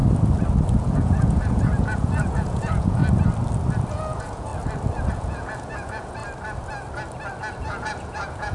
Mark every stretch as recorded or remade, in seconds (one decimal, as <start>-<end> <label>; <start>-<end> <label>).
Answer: 0.0-0.8 recorded; 0.8-3.0 remade; 3.0-3.9 recorded; 3.9-4.5 remade; 4.5-5.1 recorded; 5.1-6.2 remade; 6.2-7.6 recorded; 7.6-8.5 remade